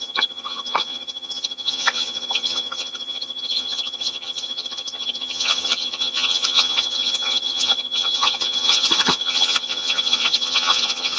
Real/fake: fake